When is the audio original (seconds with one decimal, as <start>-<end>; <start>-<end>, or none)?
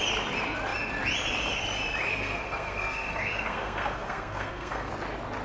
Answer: 0.0-2.1; 4.9-5.4